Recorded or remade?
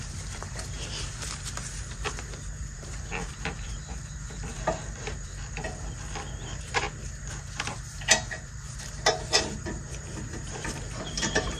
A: remade